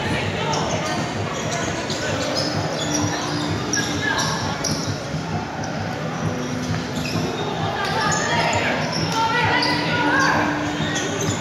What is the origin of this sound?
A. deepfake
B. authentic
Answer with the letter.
B